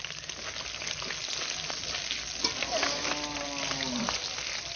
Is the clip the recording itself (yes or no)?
yes